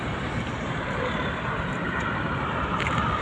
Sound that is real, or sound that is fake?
fake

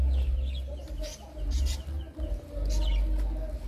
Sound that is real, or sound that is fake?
real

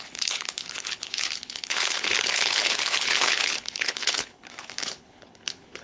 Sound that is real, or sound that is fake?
fake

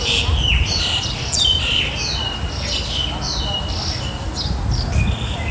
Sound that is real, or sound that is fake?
real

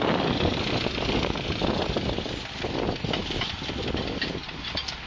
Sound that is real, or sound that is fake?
real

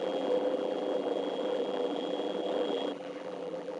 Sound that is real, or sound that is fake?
fake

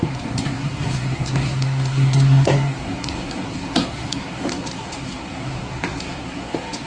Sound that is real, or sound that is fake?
fake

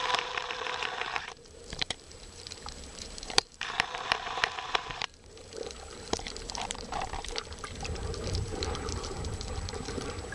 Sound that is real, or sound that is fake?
fake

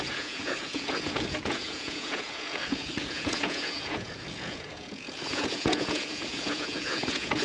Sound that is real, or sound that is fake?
fake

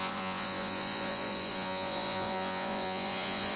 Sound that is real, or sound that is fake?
fake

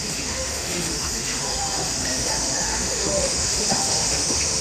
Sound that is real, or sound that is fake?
fake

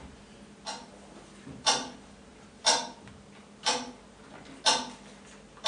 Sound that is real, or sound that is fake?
real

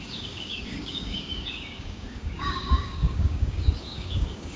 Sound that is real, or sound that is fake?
fake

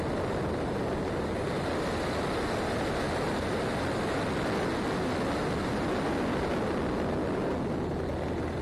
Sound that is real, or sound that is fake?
real